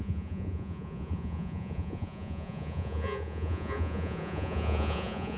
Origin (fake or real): fake